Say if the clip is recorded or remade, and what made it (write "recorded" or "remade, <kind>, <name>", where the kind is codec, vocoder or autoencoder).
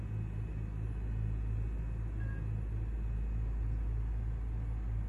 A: recorded